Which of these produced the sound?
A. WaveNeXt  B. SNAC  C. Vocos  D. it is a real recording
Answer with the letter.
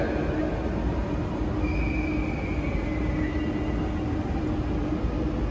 D